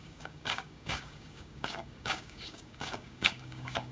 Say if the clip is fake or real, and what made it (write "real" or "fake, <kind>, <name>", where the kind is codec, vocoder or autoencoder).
fake, codec, DAC